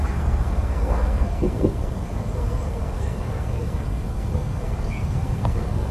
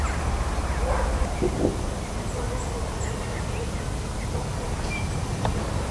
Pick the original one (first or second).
second